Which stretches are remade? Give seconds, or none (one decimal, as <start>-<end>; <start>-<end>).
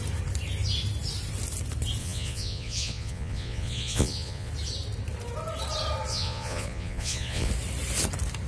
2.0-4.5; 6.1-7.5